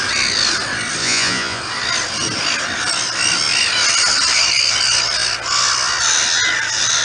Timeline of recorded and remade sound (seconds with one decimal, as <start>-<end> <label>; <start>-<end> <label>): 0.0-1.0 recorded; 1.0-1.6 remade; 1.6-7.0 recorded

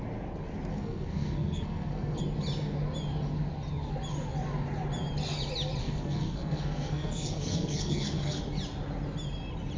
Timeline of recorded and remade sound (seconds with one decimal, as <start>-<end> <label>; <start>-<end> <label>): 0.0-0.7 recorded; 0.7-2.2 remade; 2.2-5.8 recorded; 5.8-8.4 remade; 8.4-9.8 recorded